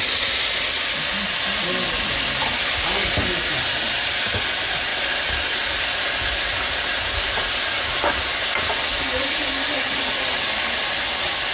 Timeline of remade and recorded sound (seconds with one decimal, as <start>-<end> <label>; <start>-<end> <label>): 0.0-11.5 recorded